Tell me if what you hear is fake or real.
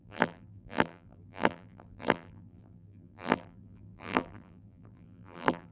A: fake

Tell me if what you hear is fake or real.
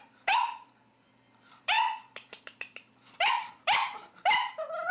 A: fake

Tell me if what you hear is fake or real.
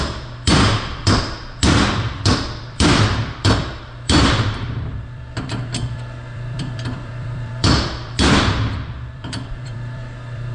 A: fake